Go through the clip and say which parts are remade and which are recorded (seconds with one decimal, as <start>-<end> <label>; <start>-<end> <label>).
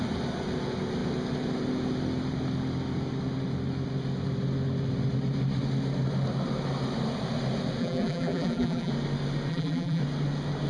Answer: 0.0-7.8 recorded; 7.8-8.9 remade; 8.9-9.5 recorded; 9.5-10.0 remade; 10.0-10.7 recorded